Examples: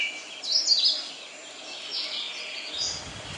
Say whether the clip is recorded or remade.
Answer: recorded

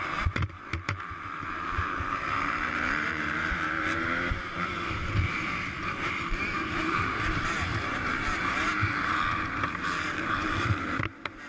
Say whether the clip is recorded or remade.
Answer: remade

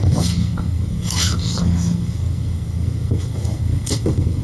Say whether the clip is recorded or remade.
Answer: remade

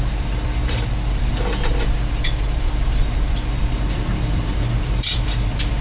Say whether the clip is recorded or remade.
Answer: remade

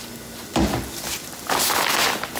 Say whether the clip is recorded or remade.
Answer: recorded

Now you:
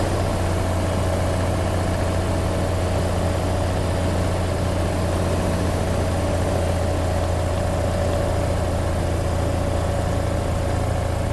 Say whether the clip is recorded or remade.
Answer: recorded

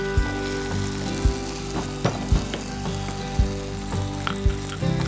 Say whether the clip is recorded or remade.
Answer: recorded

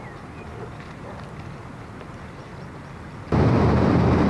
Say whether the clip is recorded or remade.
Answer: recorded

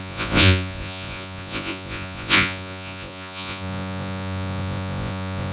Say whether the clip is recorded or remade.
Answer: remade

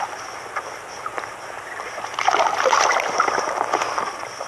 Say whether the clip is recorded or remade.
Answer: recorded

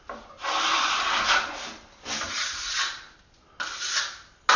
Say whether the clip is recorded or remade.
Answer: recorded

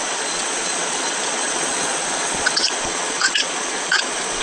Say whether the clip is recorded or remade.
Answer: remade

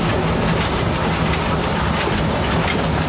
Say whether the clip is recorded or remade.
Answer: recorded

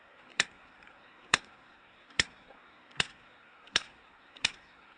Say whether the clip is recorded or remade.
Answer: remade